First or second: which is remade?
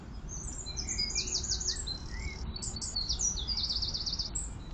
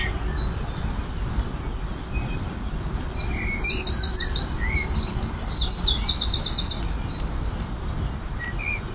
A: second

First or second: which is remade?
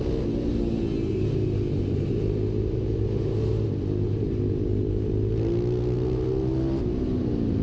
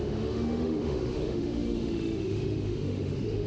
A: second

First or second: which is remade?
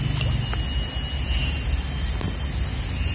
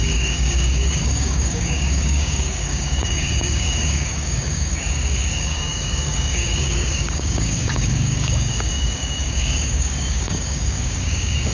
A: second